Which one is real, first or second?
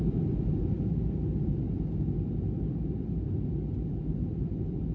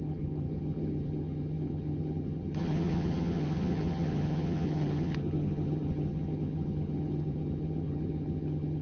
first